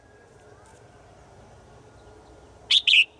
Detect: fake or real real